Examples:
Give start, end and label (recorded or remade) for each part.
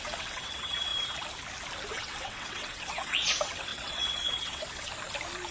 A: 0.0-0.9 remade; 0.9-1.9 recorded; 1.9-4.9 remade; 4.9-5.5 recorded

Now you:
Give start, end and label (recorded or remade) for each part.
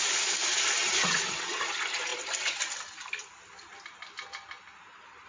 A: 0.0-0.8 recorded; 0.8-1.6 remade; 1.6-5.3 recorded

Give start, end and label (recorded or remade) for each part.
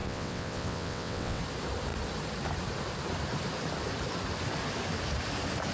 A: 0.0-1.4 remade; 1.4-5.7 recorded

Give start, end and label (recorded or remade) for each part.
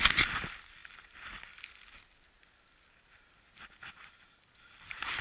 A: 0.0-5.2 recorded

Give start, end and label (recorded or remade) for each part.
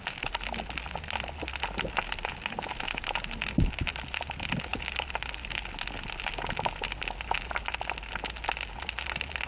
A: 0.0-9.5 recorded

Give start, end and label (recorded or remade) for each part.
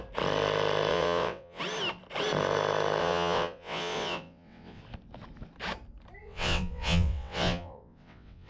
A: 0.0-0.9 recorded; 0.9-1.6 remade; 1.6-3.0 recorded; 3.0-4.8 remade; 4.8-6.2 recorded; 6.2-8.5 remade